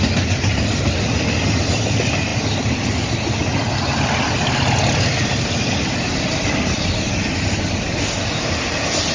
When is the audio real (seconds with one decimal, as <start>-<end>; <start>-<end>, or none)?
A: 0.0-9.1